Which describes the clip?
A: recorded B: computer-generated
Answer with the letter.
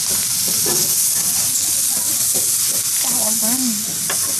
A